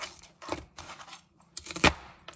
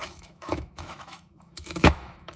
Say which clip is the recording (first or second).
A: first